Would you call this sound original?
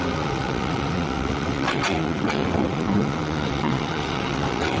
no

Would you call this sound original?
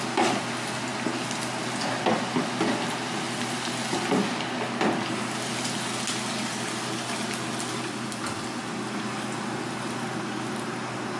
yes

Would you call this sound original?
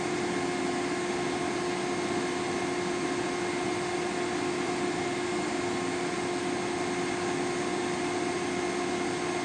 yes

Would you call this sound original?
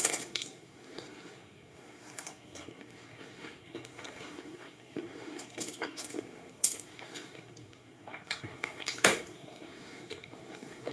no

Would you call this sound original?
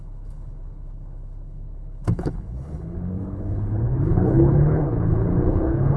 no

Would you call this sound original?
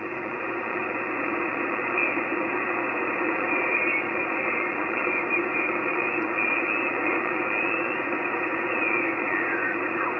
no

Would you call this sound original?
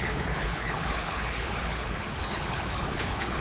no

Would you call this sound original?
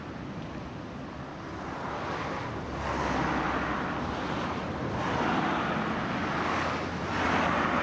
yes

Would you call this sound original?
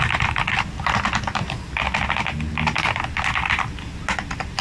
yes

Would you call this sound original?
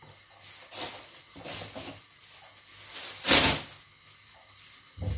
yes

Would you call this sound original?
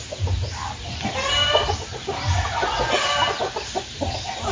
yes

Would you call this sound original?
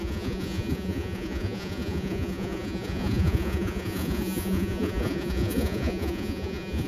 no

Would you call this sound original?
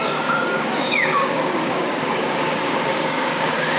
no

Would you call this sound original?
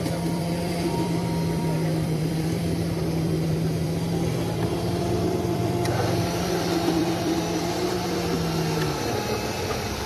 no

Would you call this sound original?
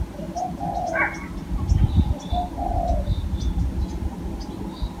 yes